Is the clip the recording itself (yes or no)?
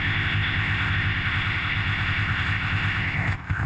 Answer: no